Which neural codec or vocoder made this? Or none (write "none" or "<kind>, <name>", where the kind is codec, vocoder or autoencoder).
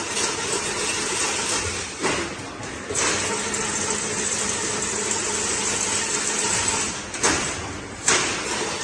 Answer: none